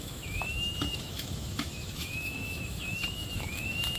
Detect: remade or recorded remade